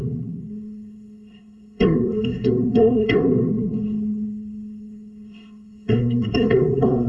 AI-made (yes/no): yes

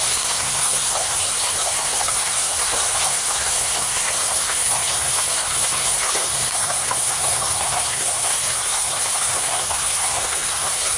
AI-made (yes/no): yes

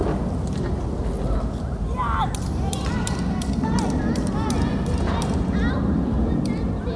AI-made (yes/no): no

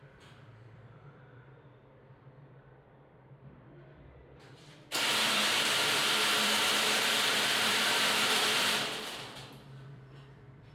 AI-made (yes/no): yes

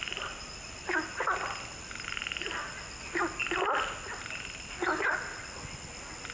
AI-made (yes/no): no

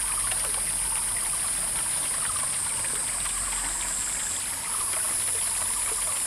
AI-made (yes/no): no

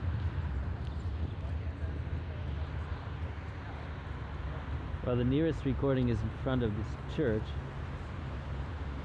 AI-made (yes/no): no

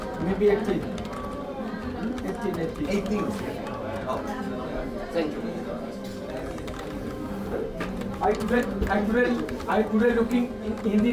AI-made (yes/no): no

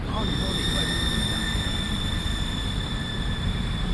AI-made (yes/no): yes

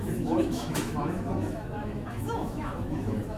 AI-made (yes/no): yes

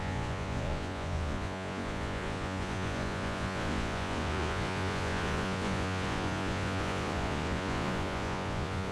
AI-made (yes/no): yes